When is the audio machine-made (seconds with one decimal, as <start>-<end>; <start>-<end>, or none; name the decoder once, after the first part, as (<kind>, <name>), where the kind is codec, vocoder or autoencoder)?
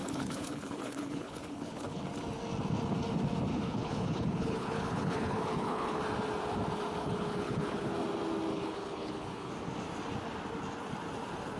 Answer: 0.0-2.0 (codec, HILCodec); 3.5-6.0; 7.0-7.9; 8.5-9.5